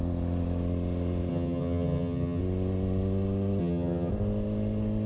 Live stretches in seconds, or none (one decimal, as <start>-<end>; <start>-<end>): 0.0-1.3; 2.4-3.6; 4.1-5.1